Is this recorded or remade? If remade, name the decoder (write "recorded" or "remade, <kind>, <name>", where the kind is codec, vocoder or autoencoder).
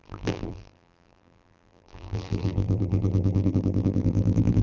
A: remade, vocoder, BigVGAN v2